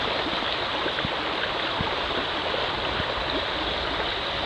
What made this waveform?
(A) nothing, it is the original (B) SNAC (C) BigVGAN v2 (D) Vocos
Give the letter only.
A